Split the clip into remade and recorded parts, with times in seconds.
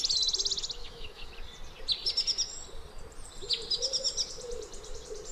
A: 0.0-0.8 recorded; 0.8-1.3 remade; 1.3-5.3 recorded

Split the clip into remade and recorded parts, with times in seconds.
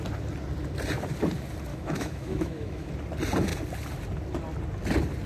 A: 0.0-1.7 recorded; 1.7-2.9 remade; 2.9-5.3 recorded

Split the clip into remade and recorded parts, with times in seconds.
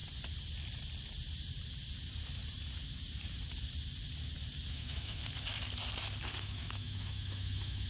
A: 0.0-4.7 recorded; 4.7-5.2 remade; 5.2-6.4 recorded; 6.4-7.9 remade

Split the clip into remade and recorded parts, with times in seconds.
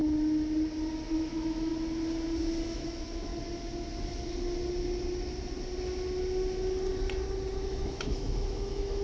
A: 0.0-1.1 recorded; 1.1-1.7 remade; 1.7-2.6 recorded; 2.6-3.3 remade; 3.3-7.5 recorded; 7.5-9.0 remade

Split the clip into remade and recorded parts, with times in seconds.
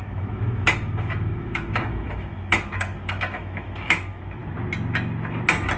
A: 0.0-4.4 remade; 4.4-5.8 recorded